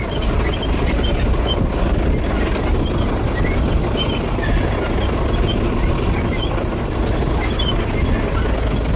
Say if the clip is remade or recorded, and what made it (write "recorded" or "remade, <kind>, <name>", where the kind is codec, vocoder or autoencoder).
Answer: recorded